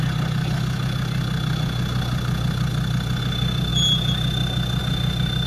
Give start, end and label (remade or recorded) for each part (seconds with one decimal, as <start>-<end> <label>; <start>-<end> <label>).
0.0-5.5 recorded